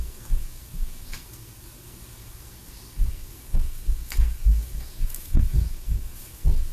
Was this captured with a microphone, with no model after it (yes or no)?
no